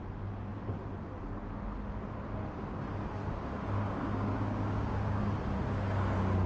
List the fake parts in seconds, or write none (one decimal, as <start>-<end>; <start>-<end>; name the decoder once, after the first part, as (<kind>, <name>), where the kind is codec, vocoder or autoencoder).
3.2-5.2 (codec, DAC)